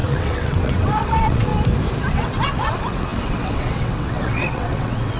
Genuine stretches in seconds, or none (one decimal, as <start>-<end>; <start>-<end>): 1.5-2.1